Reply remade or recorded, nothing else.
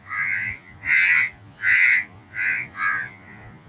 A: remade